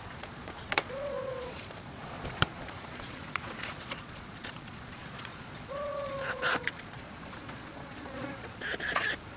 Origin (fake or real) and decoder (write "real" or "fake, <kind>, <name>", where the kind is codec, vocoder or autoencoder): fake, vocoder, Vocos